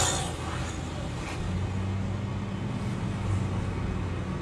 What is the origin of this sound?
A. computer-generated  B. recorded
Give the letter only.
B